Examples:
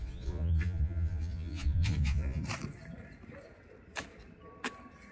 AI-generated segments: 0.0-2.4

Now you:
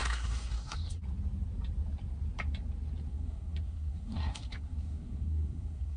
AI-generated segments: 0.0-1.0; 3.1-6.0

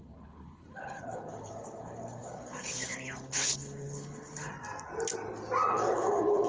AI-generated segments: 0.0-4.5; 5.7-6.5

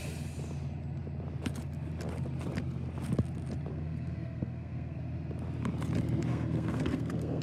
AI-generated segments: 3.7-5.0; 6.3-7.4

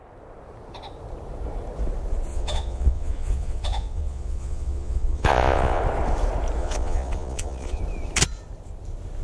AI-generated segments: 2.3-5.8; 6.6-7.8

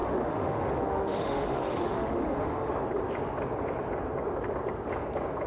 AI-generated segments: 0.0-2.7

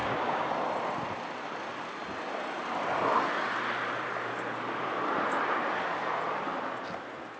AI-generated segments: 0.0-0.5